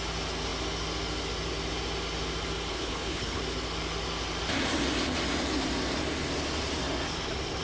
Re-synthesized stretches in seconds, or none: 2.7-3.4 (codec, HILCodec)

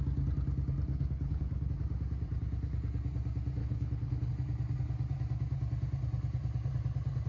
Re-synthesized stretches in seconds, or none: 0.9-1.7 (codec, HILCodec); 3.6-4.3

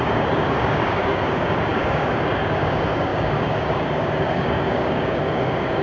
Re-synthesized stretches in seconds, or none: 0.0-5.8 (codec, DAC)

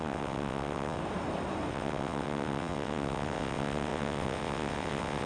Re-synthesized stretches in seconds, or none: 0.0-1.0 (vocoder, WaveNeXt); 1.7-5.3